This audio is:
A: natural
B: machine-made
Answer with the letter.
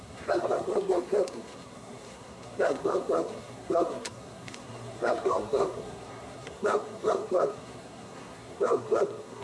B